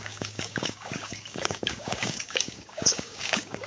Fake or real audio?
fake